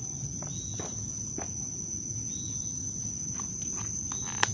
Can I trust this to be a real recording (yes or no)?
yes